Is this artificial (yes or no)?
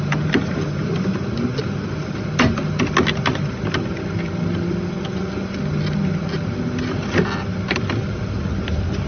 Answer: no